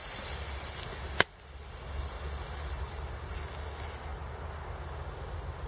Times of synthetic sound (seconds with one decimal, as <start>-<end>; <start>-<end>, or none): none